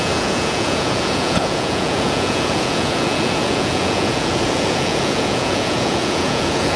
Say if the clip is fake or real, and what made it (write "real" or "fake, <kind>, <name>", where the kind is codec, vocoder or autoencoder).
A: fake, vocoder, Vocos